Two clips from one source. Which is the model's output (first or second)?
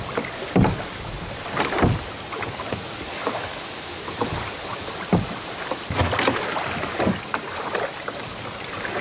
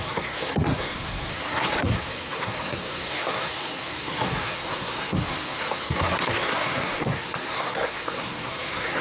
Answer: second